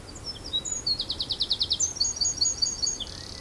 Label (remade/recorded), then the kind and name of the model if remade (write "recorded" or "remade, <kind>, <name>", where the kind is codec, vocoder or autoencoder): recorded